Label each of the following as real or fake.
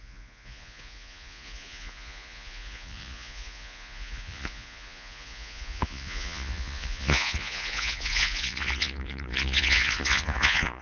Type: fake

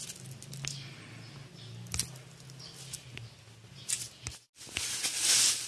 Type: real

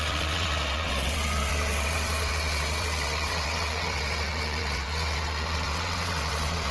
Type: fake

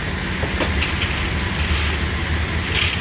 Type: real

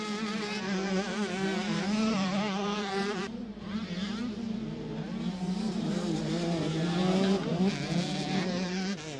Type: fake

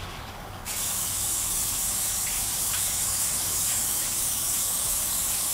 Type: fake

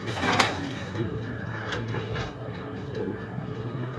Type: fake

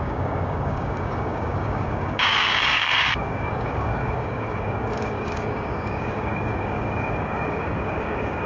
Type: fake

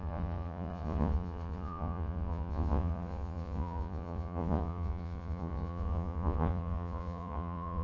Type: fake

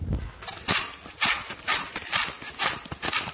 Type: real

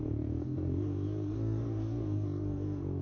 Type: fake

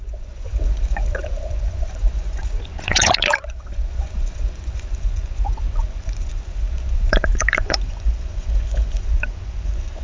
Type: fake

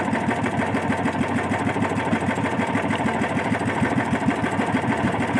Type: fake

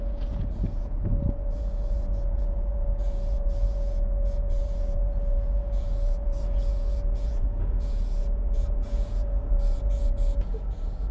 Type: fake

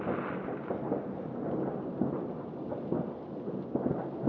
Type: real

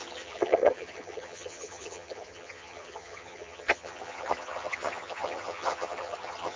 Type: fake